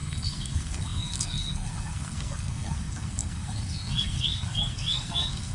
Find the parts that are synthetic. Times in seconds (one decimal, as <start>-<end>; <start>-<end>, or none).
0.0-5.5